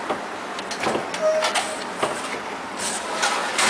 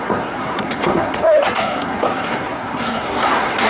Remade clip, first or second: second